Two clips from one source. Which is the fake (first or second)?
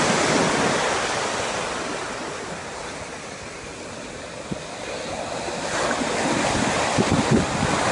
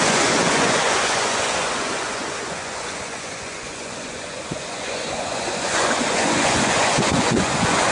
second